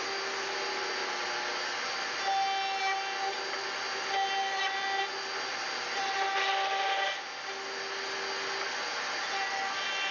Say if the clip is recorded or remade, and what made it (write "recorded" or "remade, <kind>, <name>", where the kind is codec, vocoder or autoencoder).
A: recorded